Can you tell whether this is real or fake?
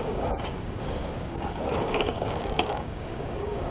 fake